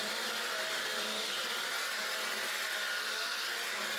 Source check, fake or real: real